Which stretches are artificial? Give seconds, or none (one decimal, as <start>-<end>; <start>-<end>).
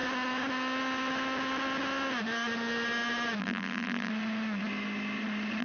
3.4-4.1